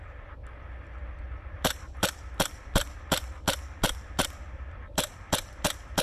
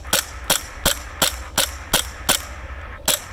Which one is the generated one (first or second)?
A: first